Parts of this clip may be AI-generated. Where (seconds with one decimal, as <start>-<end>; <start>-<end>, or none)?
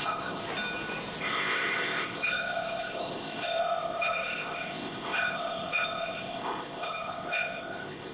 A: 0.0-0.4; 1.2-8.1